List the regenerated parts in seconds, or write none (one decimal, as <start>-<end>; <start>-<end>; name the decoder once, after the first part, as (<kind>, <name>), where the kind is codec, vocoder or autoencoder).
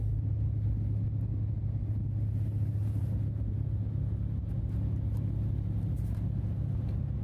none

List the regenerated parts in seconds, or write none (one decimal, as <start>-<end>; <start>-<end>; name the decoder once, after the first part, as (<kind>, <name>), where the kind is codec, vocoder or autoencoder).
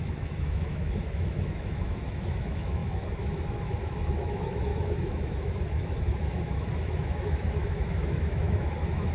0.0-9.1 (autoencoder, DAC-VAE)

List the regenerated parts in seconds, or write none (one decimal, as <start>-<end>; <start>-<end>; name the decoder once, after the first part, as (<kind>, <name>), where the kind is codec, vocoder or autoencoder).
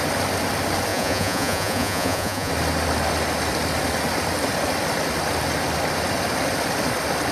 0.9-2.5 (vocoder, Vocos)